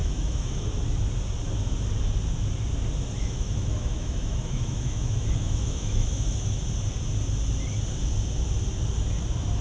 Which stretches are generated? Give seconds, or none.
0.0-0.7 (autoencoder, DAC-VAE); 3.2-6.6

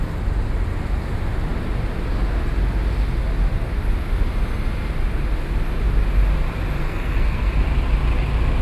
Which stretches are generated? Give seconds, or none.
6.8-7.5 (codec, SNAC)

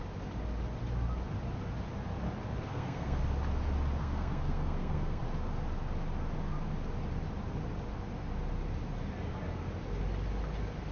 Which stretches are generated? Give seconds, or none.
2.7-3.2 (codec, SNAC); 4.0-5.2

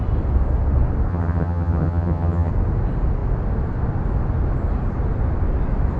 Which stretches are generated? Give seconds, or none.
1.1-2.5 (vocoder, HiFi-GAN)

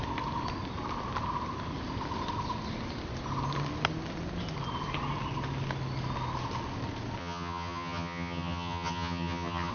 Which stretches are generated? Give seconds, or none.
7.2-9.7 (vocoder, HiFi-GAN)

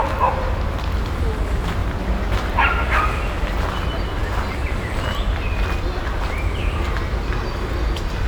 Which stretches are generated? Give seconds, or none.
1.8-2.5 (vocoder, BigVGAN v2); 4.2-6.7

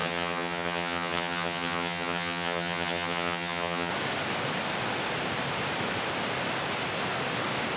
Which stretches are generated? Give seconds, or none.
0.0-3.9 (vocoder, HiFi-GAN)

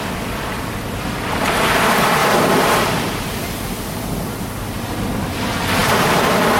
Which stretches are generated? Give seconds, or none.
0.0-1.4 (vocoder, BigVGAN v2)